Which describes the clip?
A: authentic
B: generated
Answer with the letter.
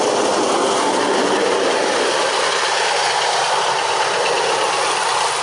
A